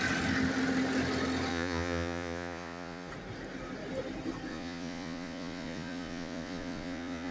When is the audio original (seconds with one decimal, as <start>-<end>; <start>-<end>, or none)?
0.0-1.5; 3.1-4.5